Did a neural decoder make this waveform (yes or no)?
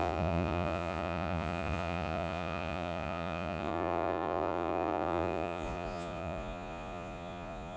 yes